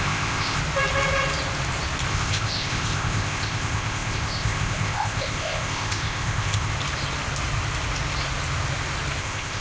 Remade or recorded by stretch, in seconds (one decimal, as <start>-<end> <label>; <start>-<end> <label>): 0.0-0.6 remade; 0.6-2.1 recorded; 2.1-6.7 remade; 6.7-9.2 recorded; 9.2-9.6 remade